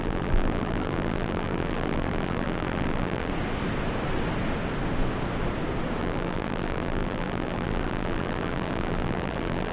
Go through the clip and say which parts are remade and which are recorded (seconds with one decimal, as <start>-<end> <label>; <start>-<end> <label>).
0.0-3.3 remade; 3.3-6.0 recorded; 6.0-9.7 remade

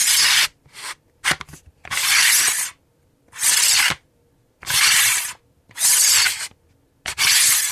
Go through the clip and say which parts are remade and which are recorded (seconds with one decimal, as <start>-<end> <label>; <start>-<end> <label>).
0.0-7.7 recorded